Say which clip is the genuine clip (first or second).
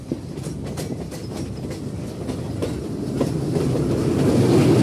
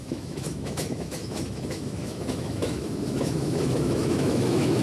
first